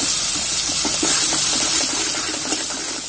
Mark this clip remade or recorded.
recorded